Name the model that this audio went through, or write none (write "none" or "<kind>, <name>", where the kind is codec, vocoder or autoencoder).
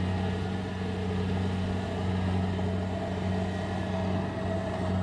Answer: none